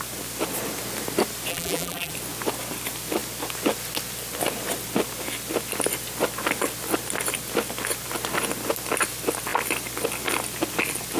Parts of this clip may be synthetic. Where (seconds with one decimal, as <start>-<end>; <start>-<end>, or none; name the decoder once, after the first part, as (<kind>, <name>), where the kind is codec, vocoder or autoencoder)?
1.5-2.1 (vocoder, BigVGAN v2)